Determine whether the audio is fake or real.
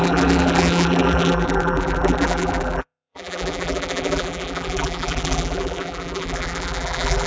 fake